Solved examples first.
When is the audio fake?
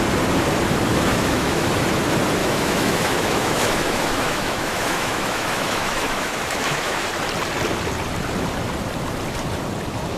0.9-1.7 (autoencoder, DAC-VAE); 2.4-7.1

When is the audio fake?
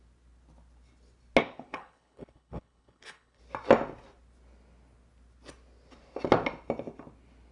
1.4-3.4 (codec, HILCodec)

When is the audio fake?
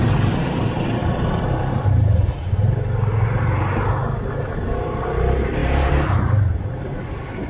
0.0-3.1 (vocoder, BigVGAN v2); 4.3-7.5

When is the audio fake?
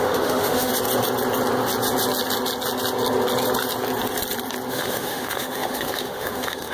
0.0-0.7 (autoencoder, DAC-VAE); 4.7-6.7